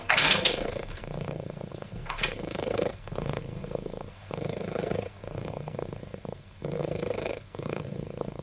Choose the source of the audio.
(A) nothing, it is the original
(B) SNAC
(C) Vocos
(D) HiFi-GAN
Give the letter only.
B